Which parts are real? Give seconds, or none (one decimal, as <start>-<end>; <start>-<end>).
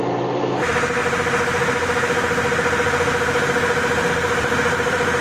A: 1.0-4.1